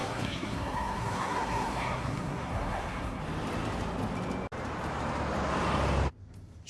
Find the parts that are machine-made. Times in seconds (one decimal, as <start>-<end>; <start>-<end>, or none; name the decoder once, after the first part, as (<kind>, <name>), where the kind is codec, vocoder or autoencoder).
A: 0.0-3.2 (codec, SNAC)